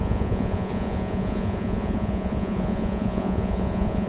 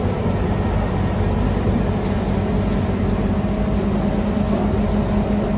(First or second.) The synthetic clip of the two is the first